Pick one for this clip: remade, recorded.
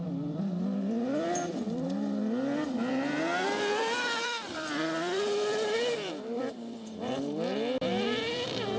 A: remade